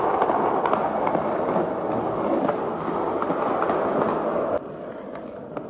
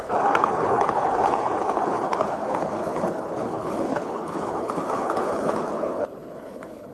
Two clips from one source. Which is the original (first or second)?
first